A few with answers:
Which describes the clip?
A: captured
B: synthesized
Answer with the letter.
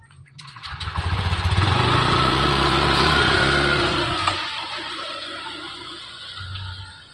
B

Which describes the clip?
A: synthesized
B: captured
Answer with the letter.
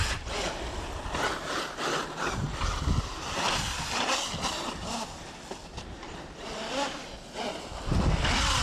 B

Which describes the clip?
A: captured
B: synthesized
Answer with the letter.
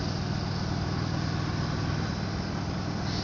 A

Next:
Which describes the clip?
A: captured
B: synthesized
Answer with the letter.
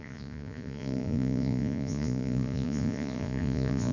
B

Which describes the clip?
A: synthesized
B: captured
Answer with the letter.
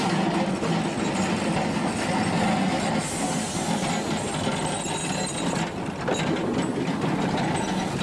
B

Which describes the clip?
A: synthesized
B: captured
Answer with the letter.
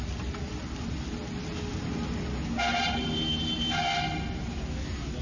B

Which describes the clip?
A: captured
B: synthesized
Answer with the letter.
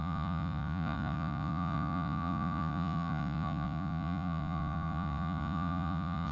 B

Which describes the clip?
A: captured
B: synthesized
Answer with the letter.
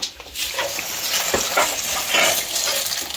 A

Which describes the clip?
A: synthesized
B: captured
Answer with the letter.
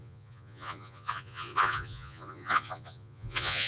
A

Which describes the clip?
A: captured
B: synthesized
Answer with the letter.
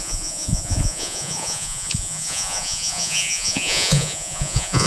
B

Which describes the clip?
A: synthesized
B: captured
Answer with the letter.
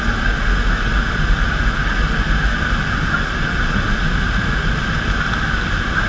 B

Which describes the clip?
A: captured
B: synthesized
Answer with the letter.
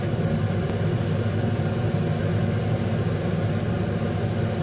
A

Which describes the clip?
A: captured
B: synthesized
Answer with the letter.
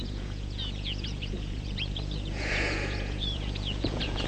B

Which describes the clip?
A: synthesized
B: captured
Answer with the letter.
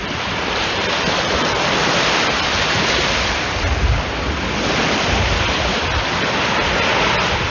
B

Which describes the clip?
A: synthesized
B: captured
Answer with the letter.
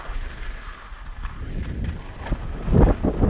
B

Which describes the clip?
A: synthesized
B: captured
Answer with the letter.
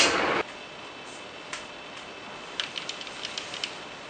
B